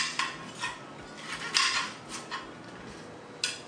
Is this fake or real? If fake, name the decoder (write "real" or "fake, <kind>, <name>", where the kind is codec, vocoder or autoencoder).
real